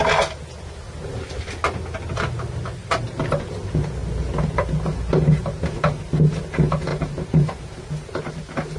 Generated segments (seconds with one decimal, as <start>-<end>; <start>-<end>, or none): 2.8-3.6; 6.9-7.8